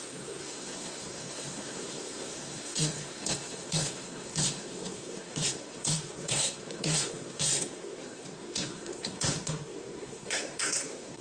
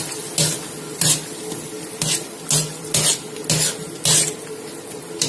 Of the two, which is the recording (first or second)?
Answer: second